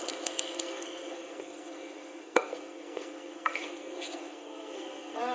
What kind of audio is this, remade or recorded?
remade